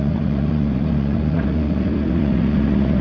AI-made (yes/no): yes